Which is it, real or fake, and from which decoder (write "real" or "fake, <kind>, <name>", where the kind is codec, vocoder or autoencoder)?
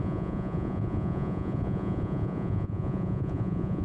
fake, vocoder, Vocos